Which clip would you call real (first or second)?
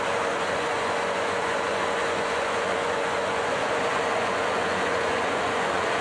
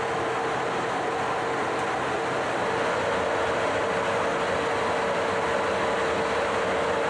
second